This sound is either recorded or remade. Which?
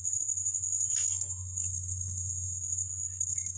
remade